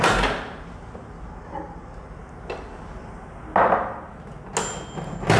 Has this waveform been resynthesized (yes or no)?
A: no